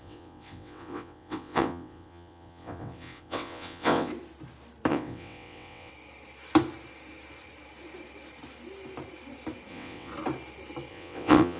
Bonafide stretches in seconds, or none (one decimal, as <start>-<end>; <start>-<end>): 4.1-4.9; 5.9-9.7; 10.1-10.9